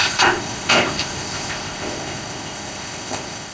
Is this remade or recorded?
remade